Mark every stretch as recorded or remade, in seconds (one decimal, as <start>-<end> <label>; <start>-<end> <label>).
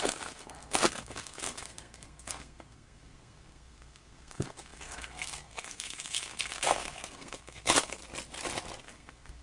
0.0-8.0 remade; 8.0-8.8 recorded; 8.8-9.4 remade